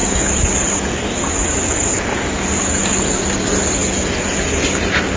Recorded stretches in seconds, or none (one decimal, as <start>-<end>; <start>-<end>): 0.0-5.2